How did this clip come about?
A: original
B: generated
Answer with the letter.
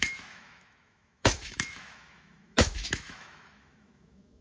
B